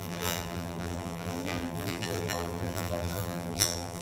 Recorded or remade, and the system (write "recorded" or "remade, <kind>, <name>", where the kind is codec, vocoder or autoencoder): remade, vocoder, BigVGAN v2